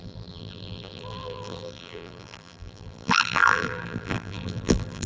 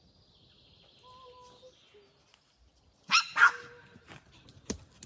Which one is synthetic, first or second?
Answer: first